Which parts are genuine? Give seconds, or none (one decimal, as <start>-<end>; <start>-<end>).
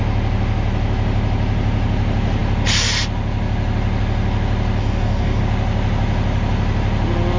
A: 0.0-4.8; 5.4-7.4